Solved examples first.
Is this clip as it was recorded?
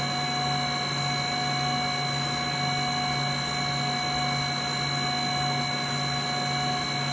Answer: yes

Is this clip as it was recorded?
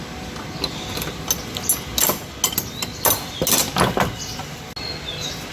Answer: yes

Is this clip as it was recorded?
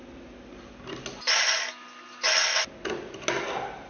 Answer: yes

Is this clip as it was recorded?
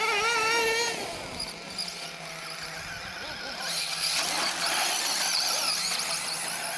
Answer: yes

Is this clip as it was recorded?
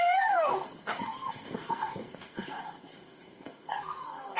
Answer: no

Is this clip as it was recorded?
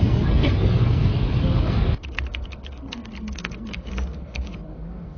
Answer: no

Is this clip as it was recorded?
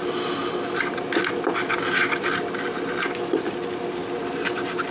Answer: yes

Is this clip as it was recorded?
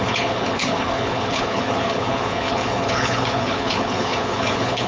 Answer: no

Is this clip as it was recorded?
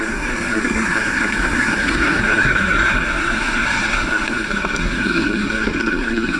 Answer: no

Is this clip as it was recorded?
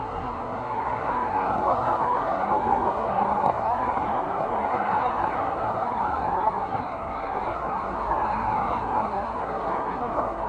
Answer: no